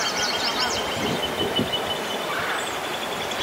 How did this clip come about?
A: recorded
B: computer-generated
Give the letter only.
A